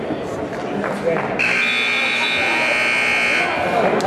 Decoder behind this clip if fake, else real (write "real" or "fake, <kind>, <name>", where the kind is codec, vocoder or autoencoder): real